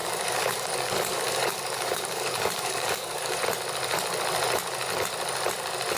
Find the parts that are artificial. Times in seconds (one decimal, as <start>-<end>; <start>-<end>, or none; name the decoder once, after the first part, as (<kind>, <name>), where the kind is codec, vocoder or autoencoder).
0.0-3.4 (codec, DAC)